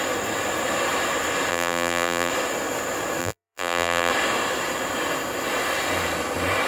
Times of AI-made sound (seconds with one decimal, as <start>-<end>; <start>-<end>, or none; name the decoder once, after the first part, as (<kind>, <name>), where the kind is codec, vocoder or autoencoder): 1.5-2.3 (vocoder, BigVGAN v2); 3.2-4.1

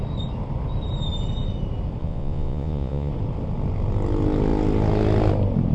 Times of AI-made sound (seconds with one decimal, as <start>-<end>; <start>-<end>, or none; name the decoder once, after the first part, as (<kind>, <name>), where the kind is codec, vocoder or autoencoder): 2.0-3.1 (vocoder, Vocos)

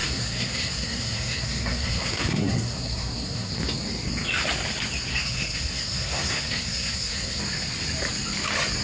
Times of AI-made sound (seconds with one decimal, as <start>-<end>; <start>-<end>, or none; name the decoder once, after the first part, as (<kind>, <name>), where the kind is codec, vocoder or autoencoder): 0.0-3.5 (codec, SNAC); 5.1-7.4

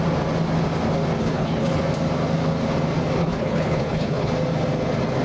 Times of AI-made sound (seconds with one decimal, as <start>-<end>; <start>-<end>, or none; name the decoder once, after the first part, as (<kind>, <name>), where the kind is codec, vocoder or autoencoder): 1.2-1.8 (codec, HILCodec); 3.2-4.3

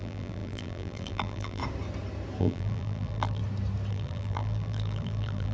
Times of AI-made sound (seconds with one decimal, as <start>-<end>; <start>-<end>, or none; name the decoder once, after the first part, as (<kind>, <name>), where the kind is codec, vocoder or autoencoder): 0.0-1.6 (vocoder, BigVGAN v2); 2.4-3.4; 3.9-5.5

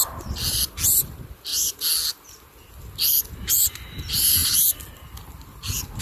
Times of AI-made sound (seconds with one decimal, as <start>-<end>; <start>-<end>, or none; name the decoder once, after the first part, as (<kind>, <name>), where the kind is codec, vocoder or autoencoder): 4.4-4.9 (vocoder, BigVGAN v2)

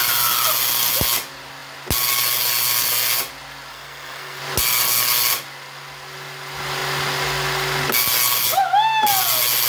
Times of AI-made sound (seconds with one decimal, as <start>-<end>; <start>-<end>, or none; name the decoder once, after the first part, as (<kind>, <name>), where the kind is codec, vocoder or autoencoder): 3.7-4.4 (codec, SNAC)

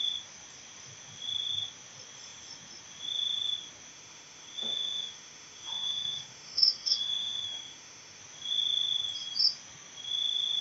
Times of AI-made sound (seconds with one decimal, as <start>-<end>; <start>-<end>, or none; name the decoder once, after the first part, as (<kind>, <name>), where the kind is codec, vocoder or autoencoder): 3.9-8.2 (autoencoder, DAC-VAE)